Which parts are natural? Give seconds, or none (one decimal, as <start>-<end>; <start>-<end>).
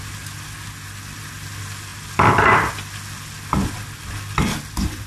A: 0.0-5.1